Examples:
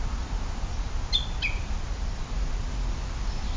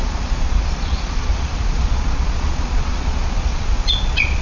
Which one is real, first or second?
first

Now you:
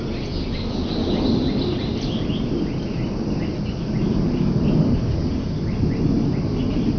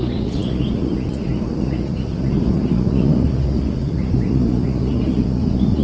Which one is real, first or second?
first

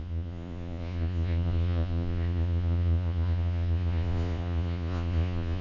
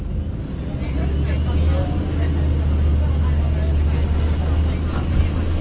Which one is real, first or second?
second